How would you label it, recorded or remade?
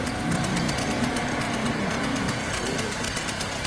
recorded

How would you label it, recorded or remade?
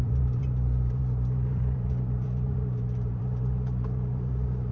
remade